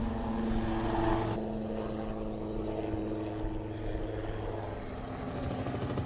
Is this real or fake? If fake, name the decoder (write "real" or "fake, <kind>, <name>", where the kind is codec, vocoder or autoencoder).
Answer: real